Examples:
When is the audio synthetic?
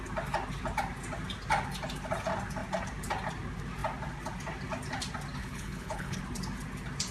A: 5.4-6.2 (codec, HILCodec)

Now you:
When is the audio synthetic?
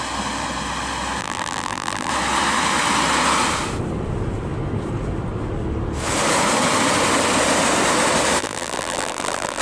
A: 1.2-2.1 (vocoder, BigVGAN v2); 8.4-9.6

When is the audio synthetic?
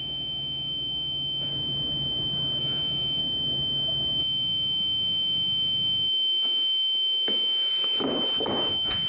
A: 0.0-1.5 (autoencoder, DAC-VAE); 2.6-3.2; 4.2-7.7; 8.7-9.1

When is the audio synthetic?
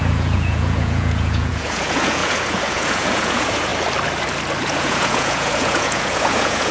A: 0.0-3.7 (vocoder, Vocos); 4.6-6.7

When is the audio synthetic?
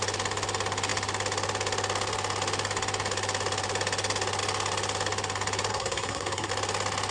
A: 5.7-6.5 (codec, SNAC)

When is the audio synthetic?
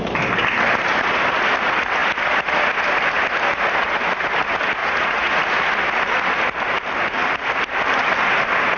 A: 4.8-5.4 (vocoder, Vocos)